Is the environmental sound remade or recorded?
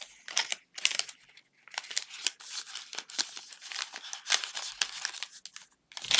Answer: recorded